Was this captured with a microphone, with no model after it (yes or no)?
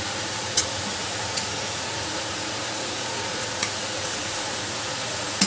no